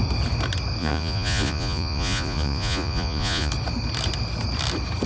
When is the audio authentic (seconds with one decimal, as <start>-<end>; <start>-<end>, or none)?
0.0-0.8; 3.5-5.1